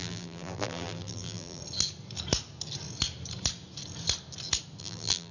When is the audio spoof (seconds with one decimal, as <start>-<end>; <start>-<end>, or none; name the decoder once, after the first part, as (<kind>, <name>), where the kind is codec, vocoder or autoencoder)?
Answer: 0.0-1.6 (vocoder, BigVGAN v2); 4.8-5.3